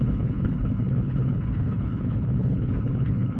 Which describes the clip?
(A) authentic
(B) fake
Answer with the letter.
B